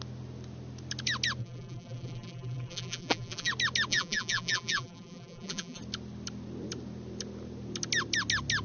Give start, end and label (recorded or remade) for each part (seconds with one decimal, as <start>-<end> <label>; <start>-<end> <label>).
0.0-1.4 recorded; 1.4-3.5 remade; 3.5-3.9 recorded; 3.9-5.8 remade; 5.8-8.6 recorded